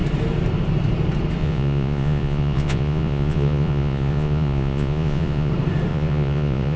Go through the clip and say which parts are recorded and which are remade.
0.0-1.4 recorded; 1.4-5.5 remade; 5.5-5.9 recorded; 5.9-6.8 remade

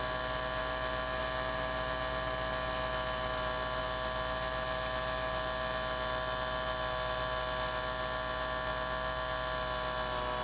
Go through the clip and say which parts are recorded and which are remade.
0.0-10.4 recorded

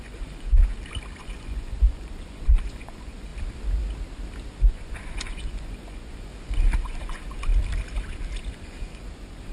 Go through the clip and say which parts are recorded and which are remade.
0.0-0.6 remade; 0.6-1.2 recorded; 1.2-3.3 remade; 3.3-4.7 recorded; 4.7-6.3 remade; 6.3-6.8 recorded; 6.8-7.5 remade; 7.5-8.4 recorded; 8.4-9.5 remade

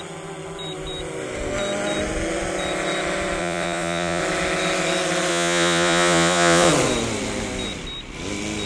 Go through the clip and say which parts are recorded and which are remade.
0.0-3.4 recorded; 3.4-4.2 remade; 4.2-5.3 recorded; 5.3-6.7 remade; 6.7-8.7 recorded

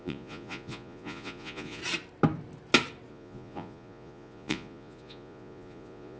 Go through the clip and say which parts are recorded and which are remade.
0.0-1.8 remade; 1.8-3.1 recorded; 3.1-6.2 remade

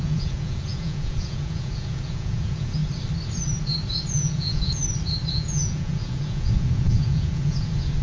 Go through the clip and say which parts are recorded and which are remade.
0.0-2.8 remade; 2.8-4.1 recorded; 4.1-4.8 remade; 4.8-5.3 recorded; 5.3-8.0 remade

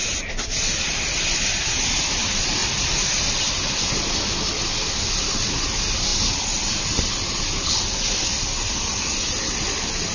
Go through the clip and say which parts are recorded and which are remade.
0.0-10.1 recorded

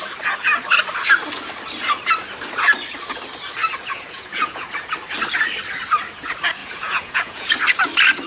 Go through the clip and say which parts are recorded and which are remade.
0.0-3.9 recorded; 3.9-4.7 remade; 4.7-6.6 recorded; 6.6-7.5 remade; 7.5-8.3 recorded